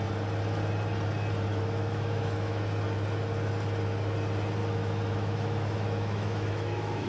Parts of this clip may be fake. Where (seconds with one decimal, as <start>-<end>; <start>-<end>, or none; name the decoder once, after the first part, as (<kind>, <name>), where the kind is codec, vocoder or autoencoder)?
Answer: 1.5-2.6 (autoencoder, DAC-VAE); 4.6-7.1